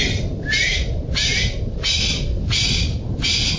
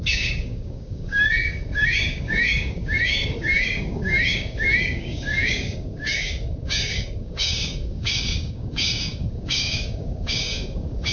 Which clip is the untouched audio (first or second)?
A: first